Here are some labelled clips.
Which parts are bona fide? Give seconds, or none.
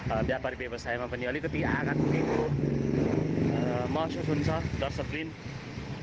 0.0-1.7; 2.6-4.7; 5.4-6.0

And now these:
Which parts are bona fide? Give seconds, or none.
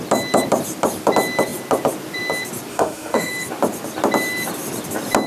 0.0-2.7; 3.3-5.3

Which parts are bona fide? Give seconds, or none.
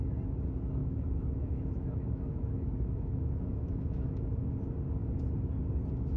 0.0-0.8; 4.5-6.2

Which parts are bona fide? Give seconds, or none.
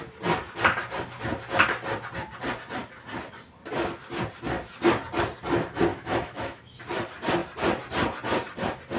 0.0-5.9; 6.8-9.0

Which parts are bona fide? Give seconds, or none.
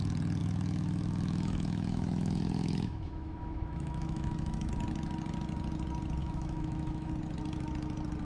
0.0-0.4; 4.7-6.2; 7.1-8.2